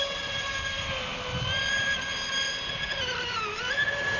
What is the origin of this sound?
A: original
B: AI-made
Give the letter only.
A